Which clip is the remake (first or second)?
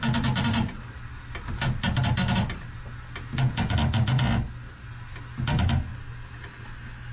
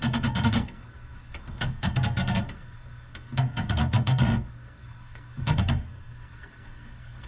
second